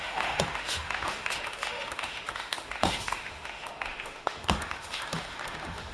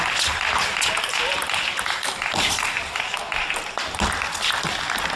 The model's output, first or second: first